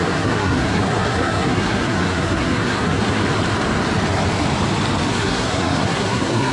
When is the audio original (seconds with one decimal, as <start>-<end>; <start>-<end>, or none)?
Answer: 3.2-5.1